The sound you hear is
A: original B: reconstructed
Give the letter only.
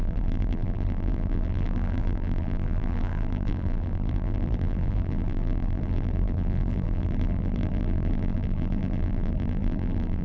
B